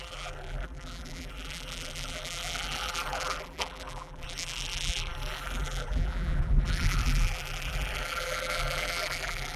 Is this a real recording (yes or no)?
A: no